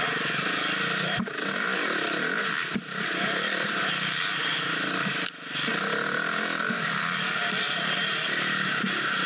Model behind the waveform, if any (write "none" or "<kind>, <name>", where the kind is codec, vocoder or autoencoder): none